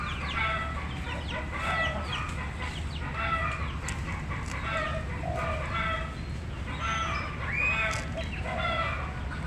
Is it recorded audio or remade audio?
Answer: recorded